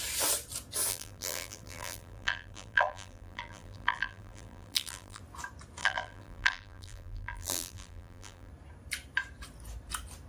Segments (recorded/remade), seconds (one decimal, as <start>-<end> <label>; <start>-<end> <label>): 0.0-0.9 recorded; 0.9-5.2 remade; 5.2-5.8 recorded; 5.8-8.5 remade; 8.5-10.3 recorded